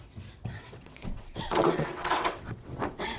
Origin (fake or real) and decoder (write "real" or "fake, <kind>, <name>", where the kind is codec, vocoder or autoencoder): fake, vocoder, WaveNeXt